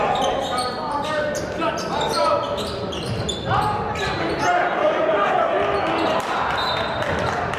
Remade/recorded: recorded